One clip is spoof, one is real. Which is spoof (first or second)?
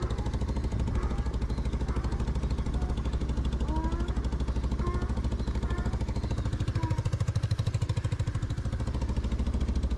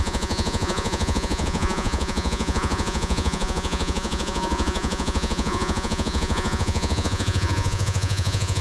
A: second